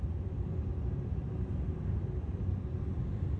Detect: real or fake real